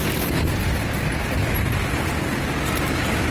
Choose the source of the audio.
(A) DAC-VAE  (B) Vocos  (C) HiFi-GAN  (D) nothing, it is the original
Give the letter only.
D